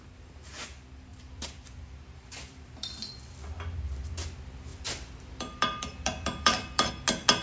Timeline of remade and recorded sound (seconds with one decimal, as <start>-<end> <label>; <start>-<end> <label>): 0.0-1.1 recorded; 1.1-3.3 remade; 3.3-4.7 recorded; 4.7-6.9 remade; 6.9-7.4 recorded